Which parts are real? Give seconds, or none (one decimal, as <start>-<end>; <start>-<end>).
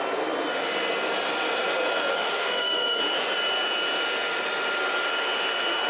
0.0-2.1; 3.0-5.9